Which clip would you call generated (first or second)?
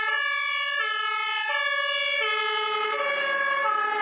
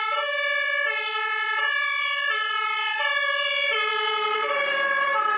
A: second